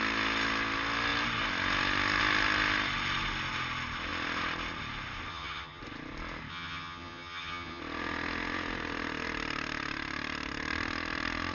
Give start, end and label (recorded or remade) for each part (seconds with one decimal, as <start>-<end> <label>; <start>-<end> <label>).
0.0-5.3 recorded; 5.3-5.8 remade; 5.8-6.5 recorded; 6.5-7.8 remade; 7.8-11.5 recorded